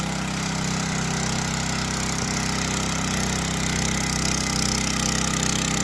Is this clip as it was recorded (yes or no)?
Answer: yes